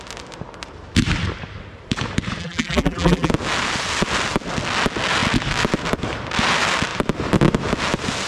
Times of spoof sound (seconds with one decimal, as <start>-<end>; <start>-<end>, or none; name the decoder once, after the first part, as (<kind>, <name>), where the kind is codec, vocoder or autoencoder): 2.4-3.3 (vocoder, BigVGAN v2)